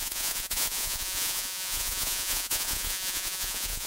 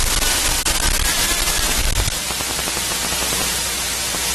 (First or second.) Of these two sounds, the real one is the second